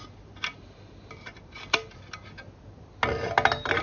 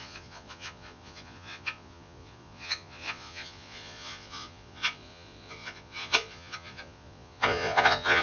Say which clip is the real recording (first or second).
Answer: first